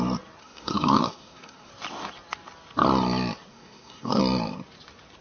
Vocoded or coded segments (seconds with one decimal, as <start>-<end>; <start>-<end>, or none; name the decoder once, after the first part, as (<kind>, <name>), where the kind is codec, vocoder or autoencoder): 0.4-1.7 (codec, SNAC); 3.5-4.2

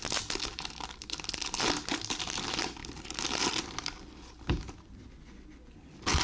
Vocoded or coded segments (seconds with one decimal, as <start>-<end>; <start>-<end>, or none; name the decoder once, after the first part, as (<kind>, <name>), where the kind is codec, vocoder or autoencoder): none

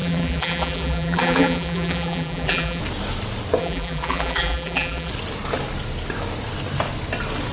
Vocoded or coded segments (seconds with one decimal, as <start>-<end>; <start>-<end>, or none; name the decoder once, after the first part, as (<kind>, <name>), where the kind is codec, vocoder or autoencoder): 0.0-2.8 (vocoder, BigVGAN v2); 3.6-5.1

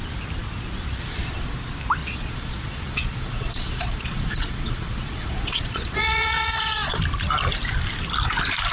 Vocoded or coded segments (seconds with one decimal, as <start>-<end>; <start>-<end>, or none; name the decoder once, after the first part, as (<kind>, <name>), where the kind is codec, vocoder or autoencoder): 2.0-7.0 (vocoder, Vocos)

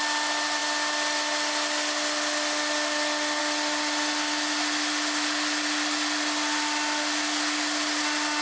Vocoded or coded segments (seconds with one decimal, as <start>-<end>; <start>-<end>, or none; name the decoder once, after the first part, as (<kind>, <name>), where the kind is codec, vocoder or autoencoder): none

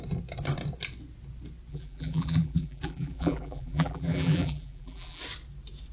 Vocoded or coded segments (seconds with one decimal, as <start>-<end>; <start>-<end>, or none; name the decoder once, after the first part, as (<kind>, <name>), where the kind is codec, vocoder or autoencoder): 1.7-5.2 (vocoder, BigVGAN v2)